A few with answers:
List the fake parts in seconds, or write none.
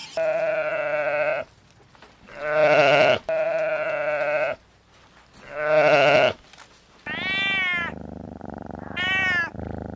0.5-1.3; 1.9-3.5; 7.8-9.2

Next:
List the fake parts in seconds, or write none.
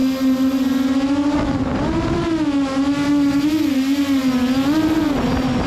none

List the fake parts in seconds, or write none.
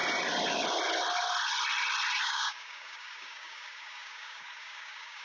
2.2-5.2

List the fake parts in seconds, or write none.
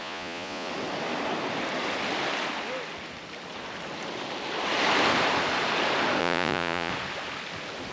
0.0-0.7; 6.2-6.9